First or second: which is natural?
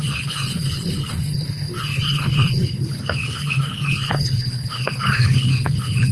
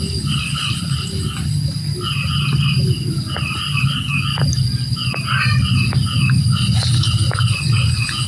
second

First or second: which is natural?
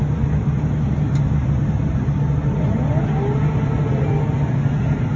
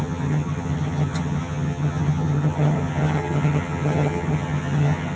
first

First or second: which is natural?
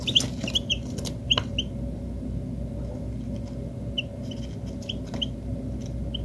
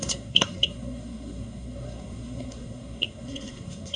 first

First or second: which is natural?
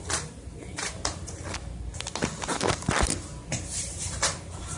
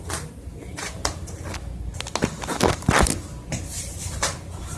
second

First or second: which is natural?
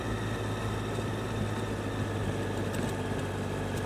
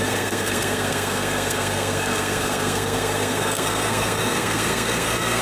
first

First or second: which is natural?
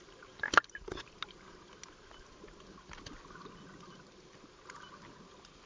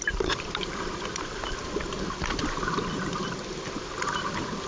first